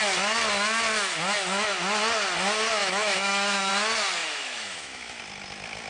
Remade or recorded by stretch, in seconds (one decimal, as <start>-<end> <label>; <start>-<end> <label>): 0.0-2.8 recorded; 2.8-3.7 remade; 3.7-4.2 recorded; 4.2-5.2 remade; 5.2-5.9 recorded